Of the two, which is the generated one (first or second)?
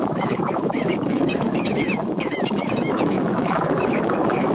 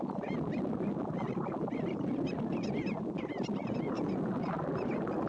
first